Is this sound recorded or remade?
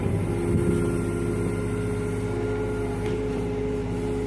recorded